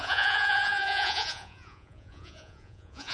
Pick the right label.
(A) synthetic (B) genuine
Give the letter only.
A